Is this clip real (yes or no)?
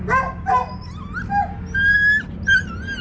yes